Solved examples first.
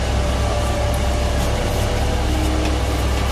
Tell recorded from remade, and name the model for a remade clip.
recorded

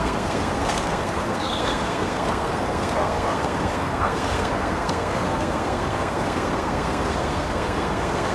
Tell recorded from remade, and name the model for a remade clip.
remade, codec, SNAC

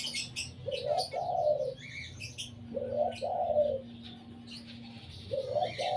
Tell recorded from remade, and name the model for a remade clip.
recorded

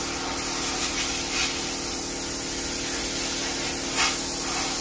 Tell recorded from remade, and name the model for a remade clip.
recorded